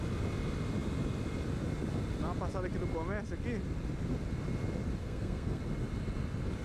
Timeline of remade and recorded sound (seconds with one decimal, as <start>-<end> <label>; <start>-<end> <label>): 0.0-5.0 recorded; 5.0-5.6 remade; 5.6-6.6 recorded